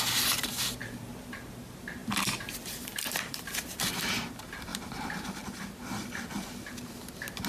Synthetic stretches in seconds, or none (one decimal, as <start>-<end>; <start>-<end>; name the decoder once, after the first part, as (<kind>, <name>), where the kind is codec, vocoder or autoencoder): 0.8-1.4 (vocoder, BigVGAN v2); 2.0-3.8; 4.7-5.6